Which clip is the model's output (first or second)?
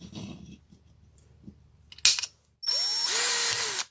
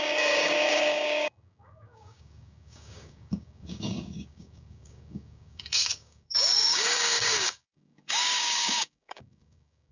second